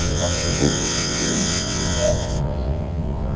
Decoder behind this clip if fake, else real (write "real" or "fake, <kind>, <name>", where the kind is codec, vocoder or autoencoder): fake, vocoder, WaveNeXt